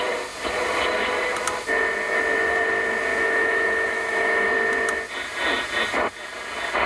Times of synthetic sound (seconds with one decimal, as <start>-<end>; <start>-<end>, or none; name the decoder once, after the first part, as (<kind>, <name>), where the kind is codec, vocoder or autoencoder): 3.1-4.5 (autoencoder, DAC-VAE)